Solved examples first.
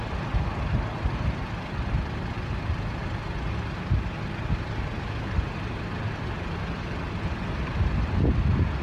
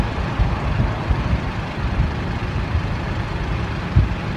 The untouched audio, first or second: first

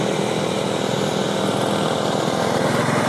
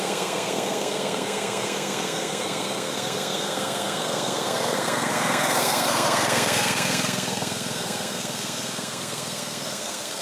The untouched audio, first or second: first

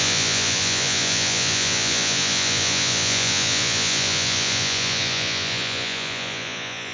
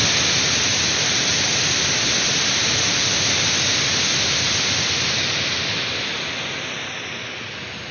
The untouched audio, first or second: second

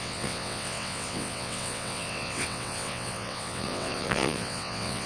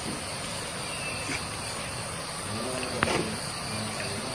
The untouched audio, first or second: second